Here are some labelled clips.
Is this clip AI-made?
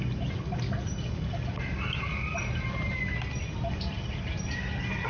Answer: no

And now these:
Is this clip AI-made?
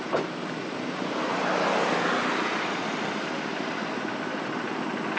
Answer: no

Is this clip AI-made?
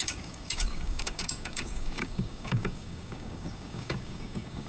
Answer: yes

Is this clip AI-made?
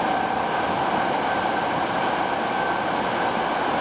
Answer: no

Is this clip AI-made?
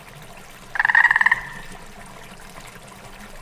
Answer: no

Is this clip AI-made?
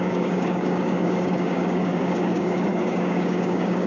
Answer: yes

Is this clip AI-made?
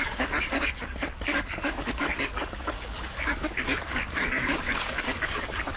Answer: yes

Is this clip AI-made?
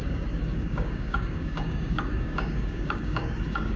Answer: yes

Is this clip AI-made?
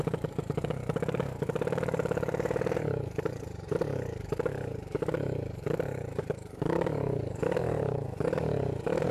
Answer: yes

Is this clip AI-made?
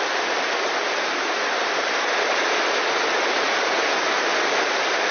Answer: no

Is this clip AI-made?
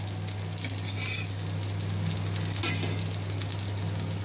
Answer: no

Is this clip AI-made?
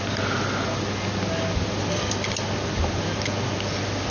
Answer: no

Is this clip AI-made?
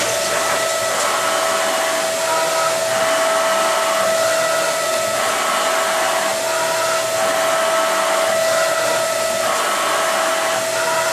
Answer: no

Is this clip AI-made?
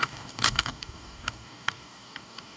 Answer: yes